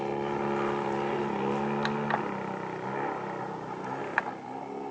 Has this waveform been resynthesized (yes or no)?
no